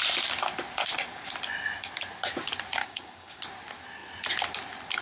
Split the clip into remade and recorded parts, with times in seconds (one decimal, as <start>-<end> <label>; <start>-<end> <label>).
0.0-2.8 recorded; 2.8-3.4 remade; 3.4-5.0 recorded